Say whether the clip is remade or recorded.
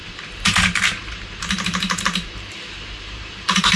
remade